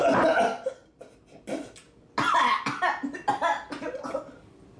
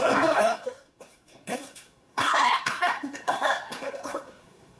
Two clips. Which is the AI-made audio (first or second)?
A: second